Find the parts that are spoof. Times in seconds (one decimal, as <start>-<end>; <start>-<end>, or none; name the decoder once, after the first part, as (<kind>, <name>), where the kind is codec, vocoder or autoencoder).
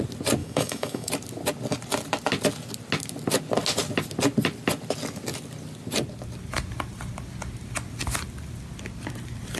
0.4-1.1 (autoencoder, DAC-VAE)